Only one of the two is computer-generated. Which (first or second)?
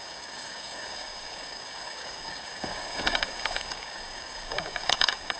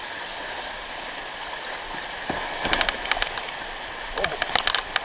first